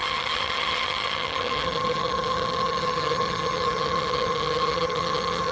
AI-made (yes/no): yes